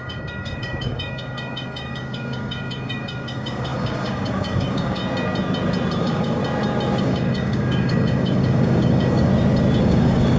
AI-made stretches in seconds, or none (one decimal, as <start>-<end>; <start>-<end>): 0.0-5.0; 6.0-6.4; 7.0-9.3; 9.8-10.4